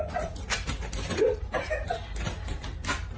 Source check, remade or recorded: recorded